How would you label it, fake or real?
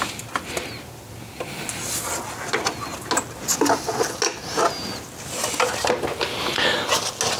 real